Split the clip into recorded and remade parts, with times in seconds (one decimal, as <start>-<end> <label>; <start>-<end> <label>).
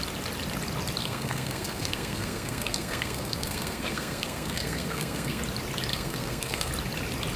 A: 0.0-1.0 recorded; 1.0-5.4 remade; 5.4-5.9 recorded; 5.9-6.7 remade; 6.7-7.4 recorded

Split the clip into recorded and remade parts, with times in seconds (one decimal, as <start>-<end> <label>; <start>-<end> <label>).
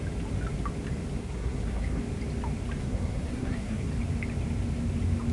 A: 0.0-1.2 recorded; 1.2-2.0 remade; 2.0-2.8 recorded; 2.8-3.9 remade; 3.9-5.3 recorded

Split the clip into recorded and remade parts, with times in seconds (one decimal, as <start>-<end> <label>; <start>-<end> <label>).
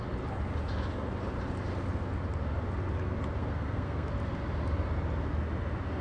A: 0.0-3.4 recorded; 3.4-4.1 remade; 4.1-6.0 recorded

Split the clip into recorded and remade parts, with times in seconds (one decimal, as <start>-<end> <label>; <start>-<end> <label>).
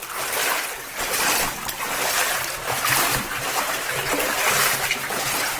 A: 0.0-5.6 recorded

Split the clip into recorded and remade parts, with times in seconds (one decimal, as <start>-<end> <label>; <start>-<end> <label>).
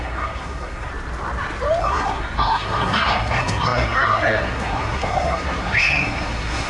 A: 0.0-0.9 remade; 0.9-1.8 recorded; 1.8-6.7 remade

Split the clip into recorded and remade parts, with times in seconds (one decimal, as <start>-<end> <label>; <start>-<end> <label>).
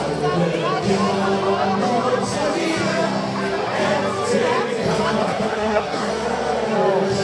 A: 0.0-5.2 recorded; 5.2-6.1 remade; 6.1-7.2 recorded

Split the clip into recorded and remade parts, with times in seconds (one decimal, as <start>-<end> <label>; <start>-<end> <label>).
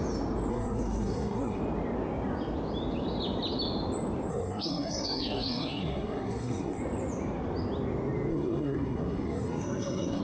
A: 0.0-0.5 recorded; 0.5-1.6 remade; 1.6-4.3 recorded; 4.3-6.8 remade; 6.8-8.3 recorded; 8.3-10.2 remade